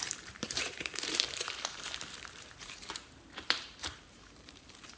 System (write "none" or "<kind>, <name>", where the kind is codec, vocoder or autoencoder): vocoder, BigVGAN v2